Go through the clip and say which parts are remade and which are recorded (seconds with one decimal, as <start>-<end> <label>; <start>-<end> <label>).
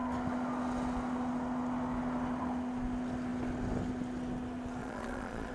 0.0-4.8 recorded; 4.8-5.5 remade